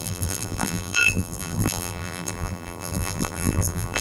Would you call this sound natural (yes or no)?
no